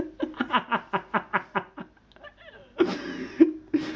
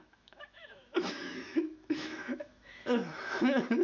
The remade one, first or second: second